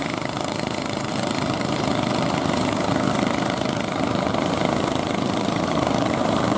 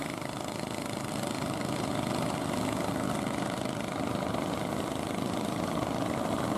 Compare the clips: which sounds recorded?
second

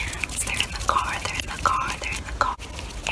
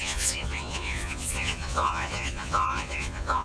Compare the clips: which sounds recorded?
first